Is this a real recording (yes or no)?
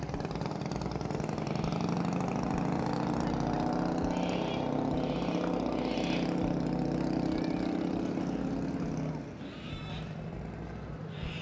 yes